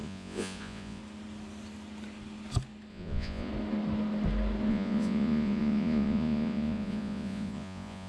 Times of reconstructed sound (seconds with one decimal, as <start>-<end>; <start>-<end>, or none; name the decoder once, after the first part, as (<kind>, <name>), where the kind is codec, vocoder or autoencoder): 0.0-1.0 (vocoder, Vocos); 2.9-3.5; 4.7-8.1